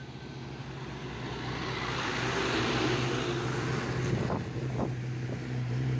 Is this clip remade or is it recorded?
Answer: recorded